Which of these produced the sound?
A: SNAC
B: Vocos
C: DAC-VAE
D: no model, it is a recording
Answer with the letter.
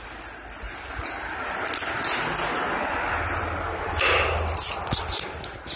D